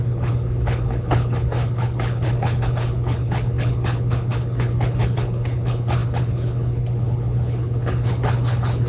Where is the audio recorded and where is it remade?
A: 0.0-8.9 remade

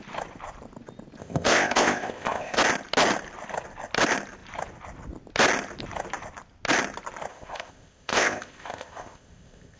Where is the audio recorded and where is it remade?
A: 0.0-1.2 recorded; 1.2-2.6 remade; 2.6-7.3 recorded; 7.3-9.8 remade

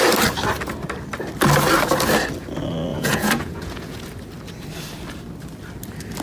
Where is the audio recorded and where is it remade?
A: 0.0-2.9 recorded; 2.9-4.0 remade; 4.0-6.2 recorded

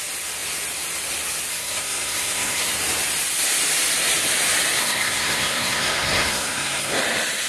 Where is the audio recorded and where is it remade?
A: 0.0-1.5 recorded; 1.5-2.7 remade; 2.7-4.8 recorded; 4.8-7.0 remade; 7.0-7.5 recorded

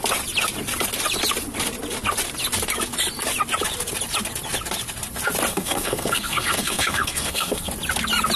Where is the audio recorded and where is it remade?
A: 0.0-5.5 recorded; 5.5-7.7 remade; 7.7-8.4 recorded